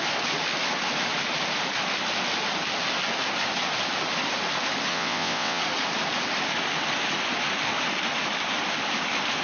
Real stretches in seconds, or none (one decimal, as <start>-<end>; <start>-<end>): 0.0-4.9; 5.6-9.4